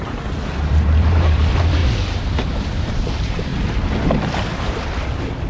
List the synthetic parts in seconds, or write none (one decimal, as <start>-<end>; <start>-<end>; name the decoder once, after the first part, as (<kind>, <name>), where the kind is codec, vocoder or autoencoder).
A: 0.0-5.5 (vocoder, BigVGAN v2)